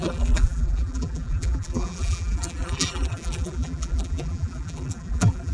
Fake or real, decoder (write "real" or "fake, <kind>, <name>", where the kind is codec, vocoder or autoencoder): fake, vocoder, BigVGAN v2